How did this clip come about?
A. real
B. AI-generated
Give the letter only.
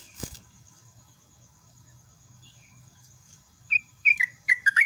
B